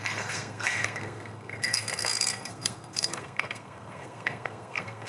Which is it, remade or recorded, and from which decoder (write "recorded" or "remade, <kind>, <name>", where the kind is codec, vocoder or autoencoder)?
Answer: remade, codec, SNAC